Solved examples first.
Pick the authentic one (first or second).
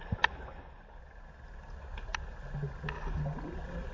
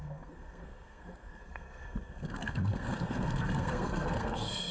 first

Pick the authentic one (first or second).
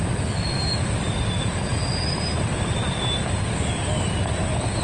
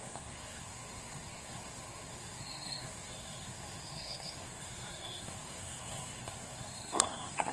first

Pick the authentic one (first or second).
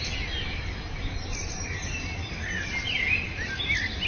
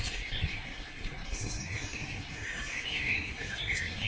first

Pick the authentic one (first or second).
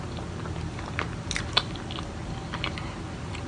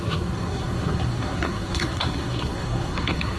first